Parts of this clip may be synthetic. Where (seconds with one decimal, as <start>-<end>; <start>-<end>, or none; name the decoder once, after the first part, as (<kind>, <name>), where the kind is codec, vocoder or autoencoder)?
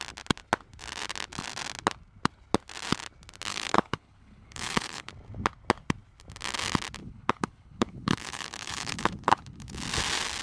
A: 3.5-5.1 (codec, HILCodec); 7.0-9.8